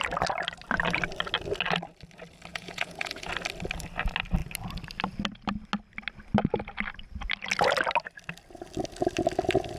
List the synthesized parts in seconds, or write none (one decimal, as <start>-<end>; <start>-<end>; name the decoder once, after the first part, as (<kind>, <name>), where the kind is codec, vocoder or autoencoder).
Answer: 2.5-3.3 (vocoder, Vocos)